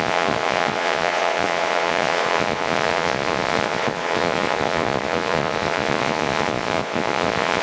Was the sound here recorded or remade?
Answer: remade